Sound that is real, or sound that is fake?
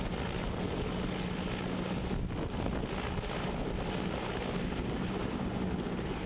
real